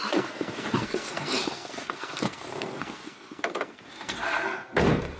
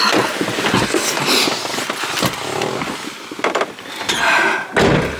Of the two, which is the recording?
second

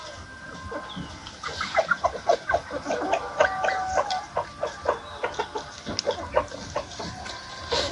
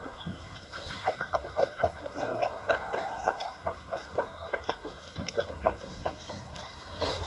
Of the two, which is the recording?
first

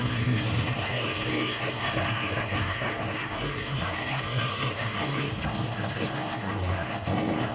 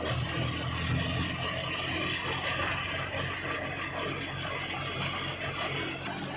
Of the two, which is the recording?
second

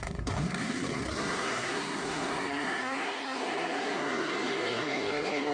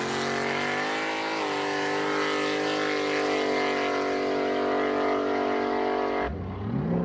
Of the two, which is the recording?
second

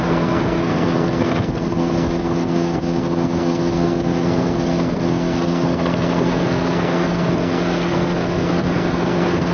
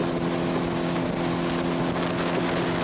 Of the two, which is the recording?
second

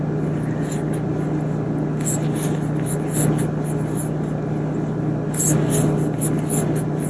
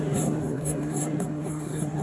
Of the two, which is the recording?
first